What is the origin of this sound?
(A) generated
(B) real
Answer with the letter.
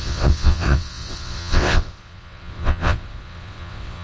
A